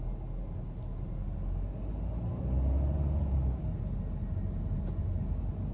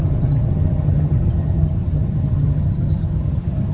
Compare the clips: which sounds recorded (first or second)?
first